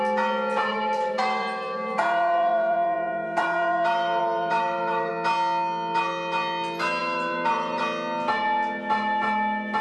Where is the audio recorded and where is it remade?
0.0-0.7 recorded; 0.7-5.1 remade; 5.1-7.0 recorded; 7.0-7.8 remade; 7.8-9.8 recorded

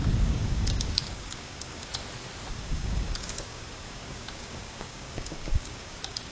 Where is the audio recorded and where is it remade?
0.0-1.9 remade; 1.9-2.5 recorded; 2.5-6.3 remade

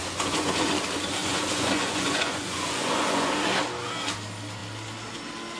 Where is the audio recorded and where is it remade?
0.0-0.7 remade; 0.7-1.2 recorded; 1.2-3.3 remade; 3.3-5.6 recorded

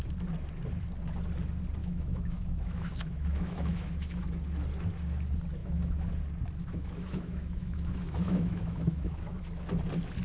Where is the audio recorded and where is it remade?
0.0-1.8 recorded; 1.8-4.3 remade; 4.3-5.6 recorded; 5.6-6.1 remade; 6.1-6.6 recorded; 6.6-9.5 remade; 9.5-10.2 recorded

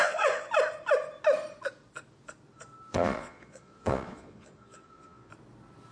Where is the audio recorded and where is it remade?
0.0-0.5 remade; 0.5-2.9 recorded; 2.9-5.3 remade; 5.3-5.9 recorded

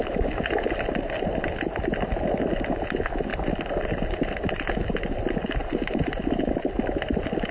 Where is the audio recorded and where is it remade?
0.0-5.6 recorded; 5.6-6.2 remade; 6.2-7.5 recorded

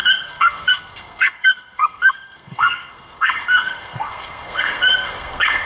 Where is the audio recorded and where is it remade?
0.0-5.6 remade

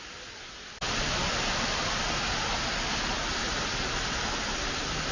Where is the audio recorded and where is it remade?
0.0-5.1 recorded